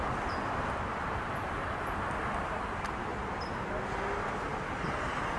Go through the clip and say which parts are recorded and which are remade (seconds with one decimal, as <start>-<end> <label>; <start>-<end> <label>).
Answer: 0.0-5.4 recorded